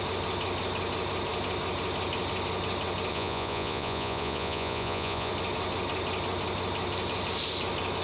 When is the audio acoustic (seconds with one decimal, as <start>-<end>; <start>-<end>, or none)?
0.0-3.1; 5.3-8.0